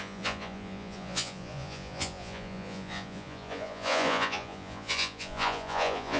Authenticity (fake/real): fake